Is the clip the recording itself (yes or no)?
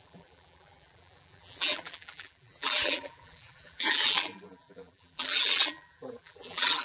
no